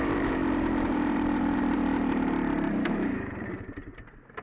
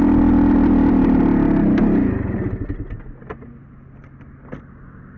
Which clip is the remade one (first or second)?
first